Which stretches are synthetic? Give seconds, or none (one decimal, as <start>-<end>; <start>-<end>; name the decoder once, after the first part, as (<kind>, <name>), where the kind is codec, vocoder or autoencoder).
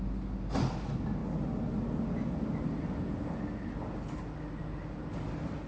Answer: none